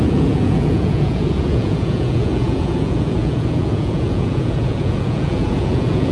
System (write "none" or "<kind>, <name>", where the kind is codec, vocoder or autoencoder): vocoder, Vocos